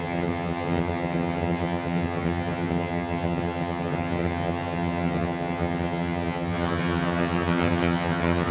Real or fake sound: fake